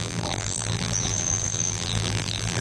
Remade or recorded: remade